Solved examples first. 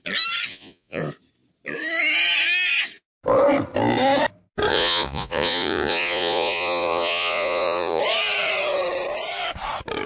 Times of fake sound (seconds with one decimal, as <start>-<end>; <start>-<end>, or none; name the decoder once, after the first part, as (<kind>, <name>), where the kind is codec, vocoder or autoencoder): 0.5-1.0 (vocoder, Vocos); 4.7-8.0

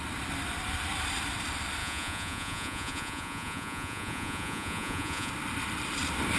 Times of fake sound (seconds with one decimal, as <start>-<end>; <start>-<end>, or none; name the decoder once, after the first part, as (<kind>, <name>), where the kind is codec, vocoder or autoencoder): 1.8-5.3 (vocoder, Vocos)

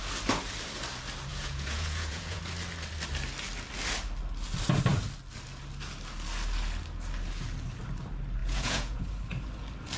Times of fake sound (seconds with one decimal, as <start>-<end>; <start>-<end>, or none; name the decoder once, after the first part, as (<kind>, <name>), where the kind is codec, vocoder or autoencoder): 1.3-2.4 (vocoder, Vocos); 8.4-9.0

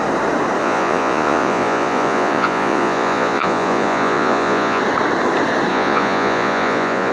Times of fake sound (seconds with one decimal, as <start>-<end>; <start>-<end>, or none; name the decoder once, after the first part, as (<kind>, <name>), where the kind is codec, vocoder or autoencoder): 0.6-4.8 (vocoder, Vocos); 5.7-7.1